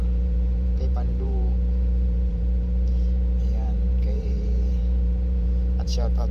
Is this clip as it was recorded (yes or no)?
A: no